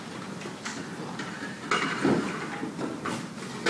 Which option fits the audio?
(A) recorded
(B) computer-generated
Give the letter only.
A